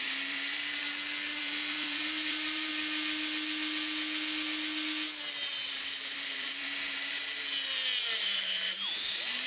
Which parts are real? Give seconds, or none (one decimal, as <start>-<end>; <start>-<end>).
0.8-1.4; 2.7-5.7; 7.2-8.2